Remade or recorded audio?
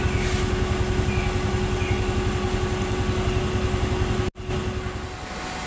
recorded